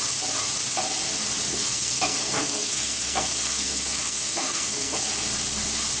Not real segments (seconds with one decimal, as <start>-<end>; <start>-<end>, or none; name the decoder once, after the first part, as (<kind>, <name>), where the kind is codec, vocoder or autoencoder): 1.5-5.1 (codec, SNAC)